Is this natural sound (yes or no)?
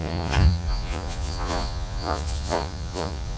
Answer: no